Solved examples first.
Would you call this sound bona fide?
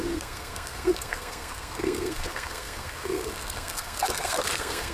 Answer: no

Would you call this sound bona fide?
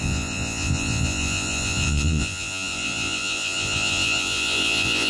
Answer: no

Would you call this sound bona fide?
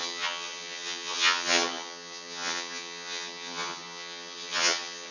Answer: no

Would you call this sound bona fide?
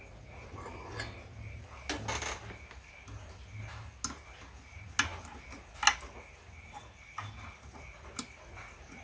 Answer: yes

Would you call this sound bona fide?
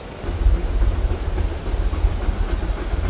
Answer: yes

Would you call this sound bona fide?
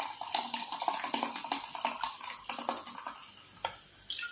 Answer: yes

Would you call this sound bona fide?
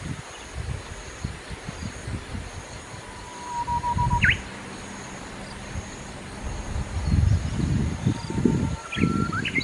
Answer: yes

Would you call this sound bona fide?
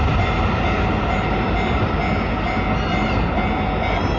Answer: yes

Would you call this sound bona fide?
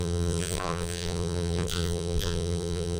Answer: no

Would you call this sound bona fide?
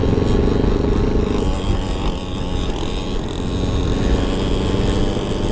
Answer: yes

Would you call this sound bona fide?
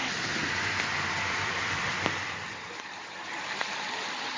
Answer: yes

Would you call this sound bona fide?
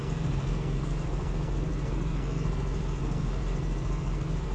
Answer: no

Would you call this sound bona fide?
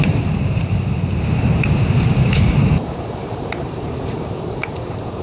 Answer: no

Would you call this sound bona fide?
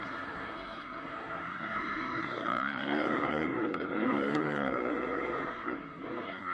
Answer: no